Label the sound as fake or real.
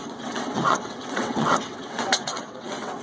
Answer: fake